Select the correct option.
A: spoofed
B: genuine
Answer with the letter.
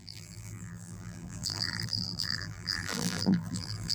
A